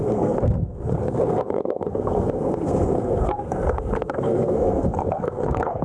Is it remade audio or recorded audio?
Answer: remade